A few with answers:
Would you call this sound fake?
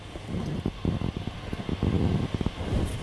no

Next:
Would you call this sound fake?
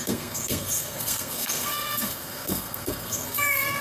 yes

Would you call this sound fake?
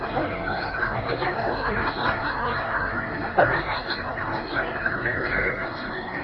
yes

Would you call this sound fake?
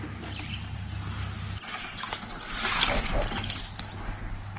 no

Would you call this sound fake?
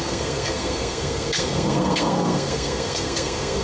yes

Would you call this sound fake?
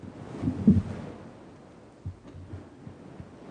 no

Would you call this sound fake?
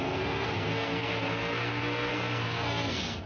yes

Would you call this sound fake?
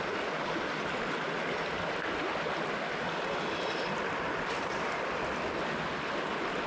no